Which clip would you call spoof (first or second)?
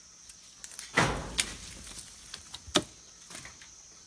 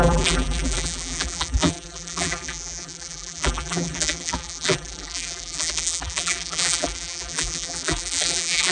second